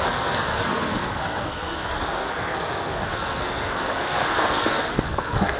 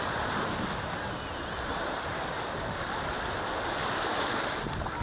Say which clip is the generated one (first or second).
first